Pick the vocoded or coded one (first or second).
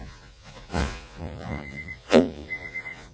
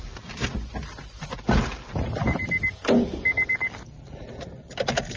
first